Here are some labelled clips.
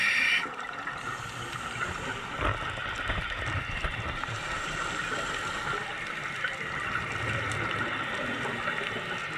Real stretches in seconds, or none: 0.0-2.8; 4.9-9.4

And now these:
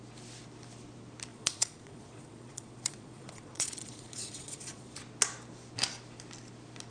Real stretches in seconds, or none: 0.0-1.3; 5.0-6.9

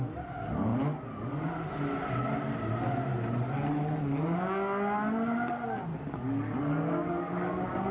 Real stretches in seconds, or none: 0.0-5.9; 7.5-7.9

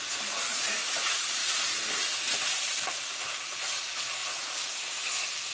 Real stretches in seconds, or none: 1.4-2.9

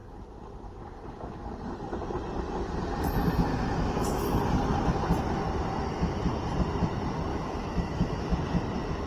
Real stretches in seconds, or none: 0.0-3.5; 4.4-7.3; 8.3-9.1

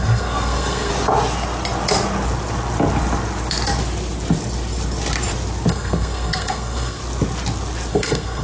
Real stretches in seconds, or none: 0.9-5.7; 7.0-7.9